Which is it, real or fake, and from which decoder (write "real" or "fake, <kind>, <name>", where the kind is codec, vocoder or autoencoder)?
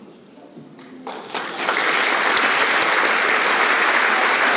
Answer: real